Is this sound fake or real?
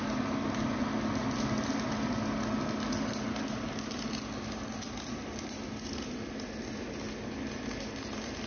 real